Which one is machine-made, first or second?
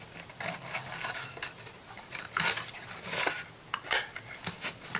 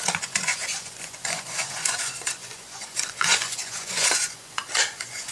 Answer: second